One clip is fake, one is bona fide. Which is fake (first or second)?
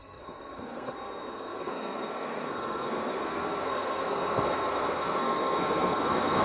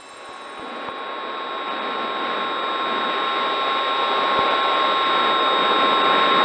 first